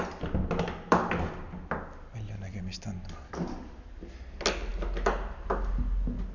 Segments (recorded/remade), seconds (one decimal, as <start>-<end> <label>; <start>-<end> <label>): 0.0-6.3 recorded